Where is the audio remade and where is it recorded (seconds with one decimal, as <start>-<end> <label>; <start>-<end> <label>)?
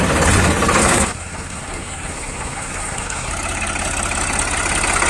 0.0-0.8 recorded; 0.8-3.3 remade; 3.3-5.1 recorded